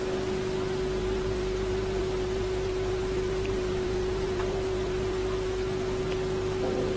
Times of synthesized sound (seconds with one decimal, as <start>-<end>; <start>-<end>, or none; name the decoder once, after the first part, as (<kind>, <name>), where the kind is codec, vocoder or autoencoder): 1.0-5.2 (vocoder, BigVGAN v2)